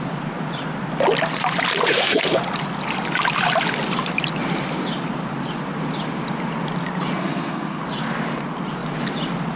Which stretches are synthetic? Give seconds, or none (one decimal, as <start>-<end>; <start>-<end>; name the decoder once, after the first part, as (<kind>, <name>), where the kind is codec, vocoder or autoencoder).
1.9-2.4 (codec, SNAC); 7.2-7.8